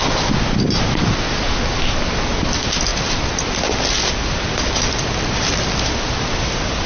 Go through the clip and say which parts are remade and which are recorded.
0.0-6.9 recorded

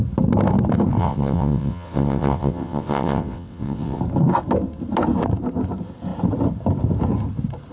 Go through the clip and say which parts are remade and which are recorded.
0.0-1.0 recorded; 1.0-4.0 remade; 4.0-7.7 recorded

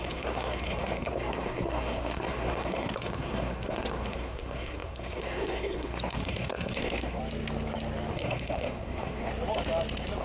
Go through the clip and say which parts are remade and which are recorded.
0.0-7.2 remade; 7.2-8.1 recorded; 8.1-9.3 remade; 9.3-10.2 recorded

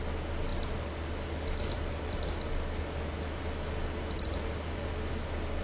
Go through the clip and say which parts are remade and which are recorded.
0.0-5.6 recorded

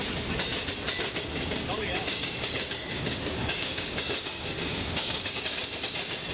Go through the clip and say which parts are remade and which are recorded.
0.0-1.8 recorded; 1.8-5.6 remade; 5.6-6.3 recorded

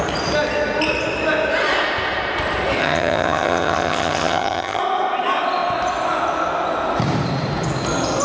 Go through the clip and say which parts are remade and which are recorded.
0.0-2.8 recorded; 2.8-4.8 remade; 4.8-8.2 recorded

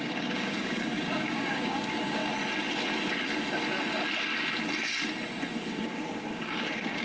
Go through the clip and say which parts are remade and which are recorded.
0.0-2.2 remade; 2.2-5.7 recorded; 5.7-7.0 remade

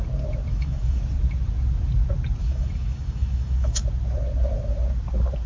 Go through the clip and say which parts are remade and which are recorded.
0.0-0.5 recorded; 0.5-1.0 remade; 1.0-2.4 recorded; 2.4-3.8 remade; 3.8-5.5 recorded